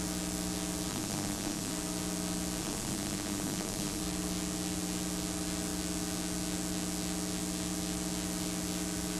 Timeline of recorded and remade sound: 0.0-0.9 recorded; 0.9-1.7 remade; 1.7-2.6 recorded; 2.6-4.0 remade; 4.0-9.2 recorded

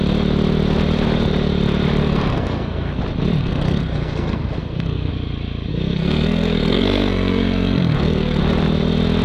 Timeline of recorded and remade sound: 0.0-2.0 recorded; 2.0-3.0 remade; 3.0-3.4 recorded; 3.4-5.1 remade; 5.1-5.7 recorded; 5.7-8.4 remade; 8.4-9.2 recorded

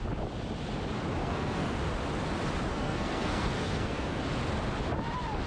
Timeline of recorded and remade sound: 0.0-1.2 recorded; 1.2-1.8 remade; 1.8-2.7 recorded; 2.7-4.2 remade; 4.2-5.5 recorded

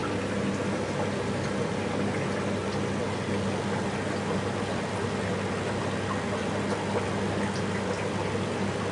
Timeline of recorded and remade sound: 0.0-8.9 recorded

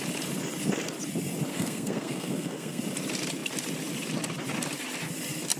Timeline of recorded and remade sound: 0.0-1.5 recorded; 1.5-2.8 remade; 2.8-5.6 recorded

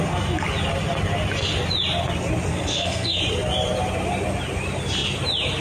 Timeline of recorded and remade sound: 0.0-2.5 recorded; 2.5-3.2 remade; 3.2-5.6 recorded

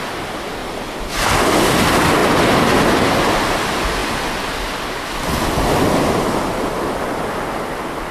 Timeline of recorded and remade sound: 0.0-8.1 recorded